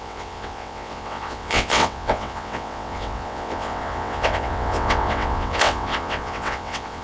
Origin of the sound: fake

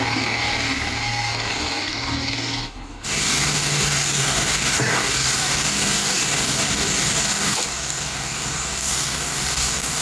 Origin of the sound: fake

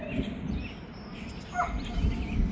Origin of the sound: real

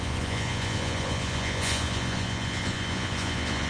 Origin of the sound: fake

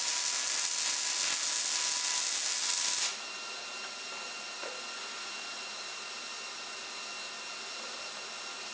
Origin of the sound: real